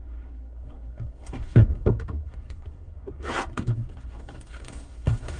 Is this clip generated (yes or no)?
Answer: yes